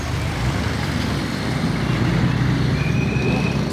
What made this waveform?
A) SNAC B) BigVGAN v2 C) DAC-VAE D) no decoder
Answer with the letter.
D